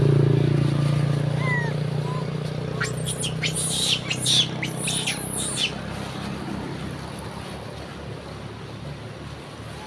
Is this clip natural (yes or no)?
yes